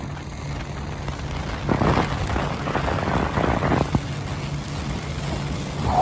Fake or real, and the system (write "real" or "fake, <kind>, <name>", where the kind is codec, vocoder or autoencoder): real